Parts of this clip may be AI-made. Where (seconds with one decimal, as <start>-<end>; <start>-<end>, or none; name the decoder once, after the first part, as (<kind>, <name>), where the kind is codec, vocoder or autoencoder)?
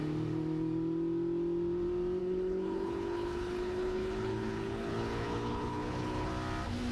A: 2.2-6.3 (codec, HILCodec)